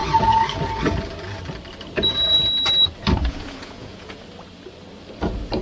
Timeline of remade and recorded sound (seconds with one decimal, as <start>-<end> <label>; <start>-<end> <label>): 0.0-3.2 recorded; 3.2-4.2 remade; 4.2-5.6 recorded